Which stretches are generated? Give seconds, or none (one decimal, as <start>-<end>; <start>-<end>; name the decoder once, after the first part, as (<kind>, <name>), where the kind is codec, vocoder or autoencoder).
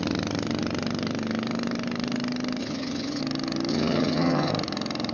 2.6-3.2 (vocoder, HiFi-GAN); 3.7-4.5